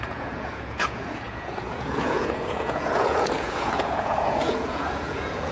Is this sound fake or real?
fake